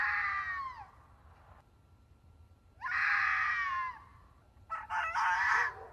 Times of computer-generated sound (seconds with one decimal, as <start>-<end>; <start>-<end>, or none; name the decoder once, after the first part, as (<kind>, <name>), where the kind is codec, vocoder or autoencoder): 4.1-4.9 (vocoder, BigVGAN v2)